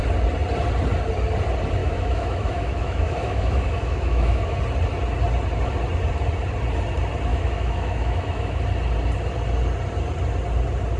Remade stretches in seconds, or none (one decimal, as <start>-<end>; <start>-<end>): 1.8-4.6; 7.3-8.6